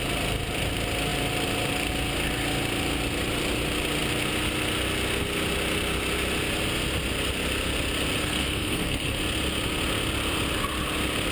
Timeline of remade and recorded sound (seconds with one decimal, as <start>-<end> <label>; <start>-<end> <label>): 0.0-8.2 recorded; 8.2-9.2 remade; 9.2-11.3 recorded